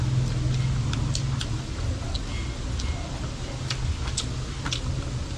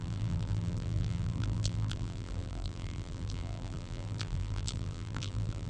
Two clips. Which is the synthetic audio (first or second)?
second